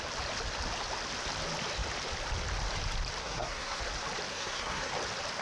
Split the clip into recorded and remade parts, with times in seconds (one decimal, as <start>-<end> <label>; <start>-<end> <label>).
0.0-3.2 recorded; 3.2-3.8 remade; 3.8-4.3 recorded; 4.3-4.9 remade; 4.9-5.4 recorded

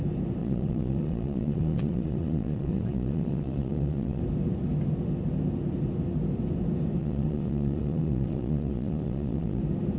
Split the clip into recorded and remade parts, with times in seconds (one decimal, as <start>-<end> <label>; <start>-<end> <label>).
0.0-0.4 recorded; 0.4-4.2 remade; 4.2-7.0 recorded; 7.0-9.6 remade; 9.6-10.0 recorded

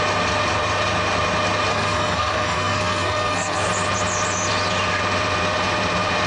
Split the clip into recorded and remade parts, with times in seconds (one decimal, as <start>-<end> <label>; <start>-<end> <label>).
0.0-1.7 recorded; 1.7-3.7 remade; 3.7-6.3 recorded

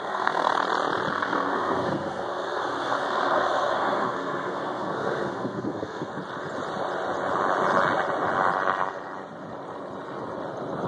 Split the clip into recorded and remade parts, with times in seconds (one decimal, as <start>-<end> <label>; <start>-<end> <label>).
0.0-0.5 remade; 0.5-1.1 recorded; 1.1-6.1 remade; 6.1-10.9 recorded

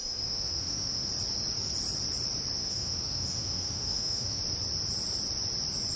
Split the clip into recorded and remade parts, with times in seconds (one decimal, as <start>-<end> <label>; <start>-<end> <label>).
0.0-1.1 remade; 1.1-2.6 recorded; 2.6-4.4 remade; 4.4-6.0 recorded